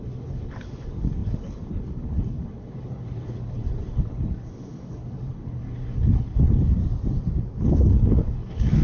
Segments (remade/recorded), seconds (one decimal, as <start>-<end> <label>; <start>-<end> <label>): 0.0-6.8 remade; 6.8-7.6 recorded; 7.6-8.8 remade